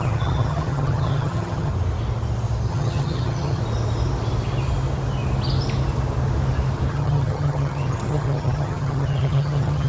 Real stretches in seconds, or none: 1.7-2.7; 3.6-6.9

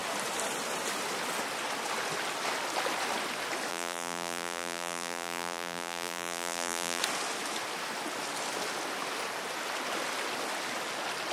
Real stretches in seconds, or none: 0.0-3.7; 7.0-11.3

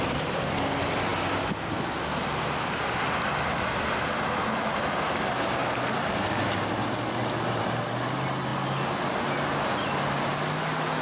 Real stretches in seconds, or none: 0.0-11.0

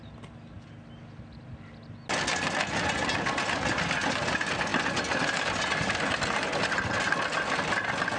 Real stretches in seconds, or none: 0.0-8.2

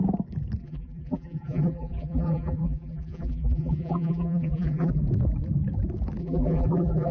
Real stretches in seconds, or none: 0.0-0.6; 4.9-6.2

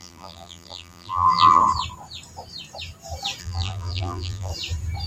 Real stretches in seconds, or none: 1.6-3.4; 4.5-5.1